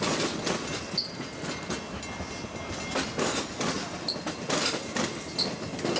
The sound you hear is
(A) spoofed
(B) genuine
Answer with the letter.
B